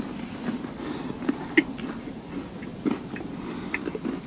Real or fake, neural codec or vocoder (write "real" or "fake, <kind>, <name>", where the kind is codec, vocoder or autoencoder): real